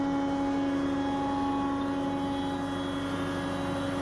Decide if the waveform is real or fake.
real